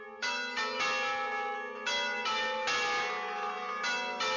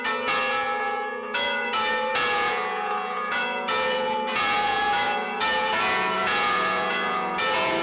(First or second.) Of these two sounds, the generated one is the second